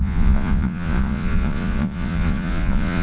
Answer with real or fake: fake